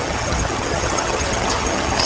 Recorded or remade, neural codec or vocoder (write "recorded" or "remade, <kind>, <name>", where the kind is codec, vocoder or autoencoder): remade, vocoder, HiFi-GAN